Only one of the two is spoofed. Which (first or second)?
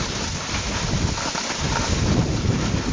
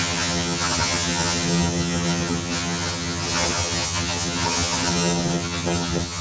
second